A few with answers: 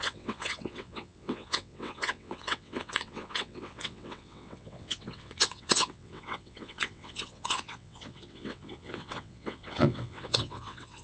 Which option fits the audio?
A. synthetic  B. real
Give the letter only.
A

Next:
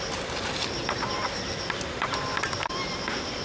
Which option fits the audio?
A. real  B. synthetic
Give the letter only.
A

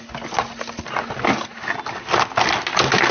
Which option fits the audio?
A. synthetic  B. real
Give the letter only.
B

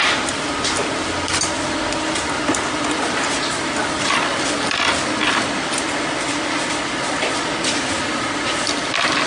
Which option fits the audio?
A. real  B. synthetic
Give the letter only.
A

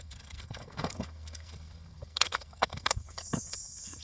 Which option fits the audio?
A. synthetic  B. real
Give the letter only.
A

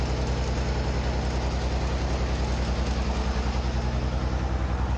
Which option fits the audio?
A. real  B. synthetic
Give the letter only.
A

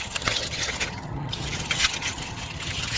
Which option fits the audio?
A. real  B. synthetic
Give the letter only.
B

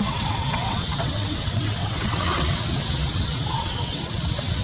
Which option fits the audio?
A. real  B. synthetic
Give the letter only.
B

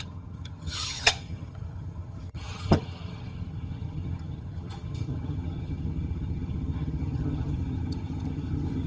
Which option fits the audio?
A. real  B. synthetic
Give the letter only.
B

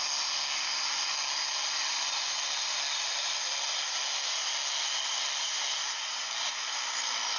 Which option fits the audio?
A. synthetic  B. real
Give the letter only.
B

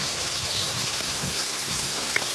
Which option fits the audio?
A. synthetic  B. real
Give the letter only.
A